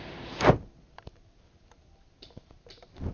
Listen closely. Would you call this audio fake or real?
real